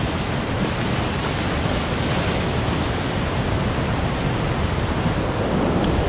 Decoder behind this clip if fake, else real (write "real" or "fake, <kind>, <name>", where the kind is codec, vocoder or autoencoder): real